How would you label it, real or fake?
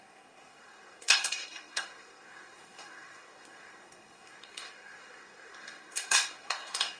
fake